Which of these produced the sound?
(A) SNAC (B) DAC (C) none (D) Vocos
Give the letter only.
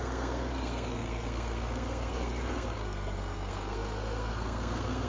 A